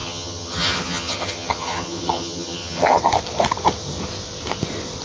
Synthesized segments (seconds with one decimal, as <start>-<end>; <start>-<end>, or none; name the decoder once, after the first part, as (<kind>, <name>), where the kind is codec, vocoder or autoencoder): 0.0-3.0 (vocoder, HiFi-GAN)